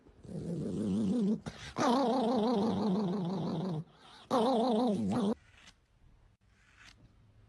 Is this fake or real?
real